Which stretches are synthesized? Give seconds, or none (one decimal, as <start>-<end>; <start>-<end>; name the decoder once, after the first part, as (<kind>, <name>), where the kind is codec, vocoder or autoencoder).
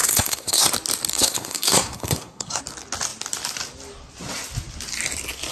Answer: 0.0-0.7 (codec, SNAC); 1.1-2.6